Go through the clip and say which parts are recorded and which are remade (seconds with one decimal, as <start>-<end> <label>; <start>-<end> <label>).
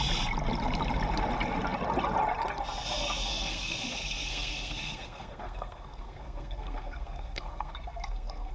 0.0-3.3 recorded; 3.3-8.5 remade